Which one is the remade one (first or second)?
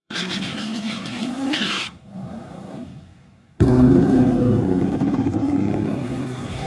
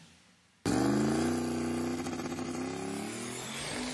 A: first